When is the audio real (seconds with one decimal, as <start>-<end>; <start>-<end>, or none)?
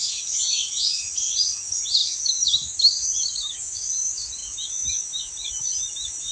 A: none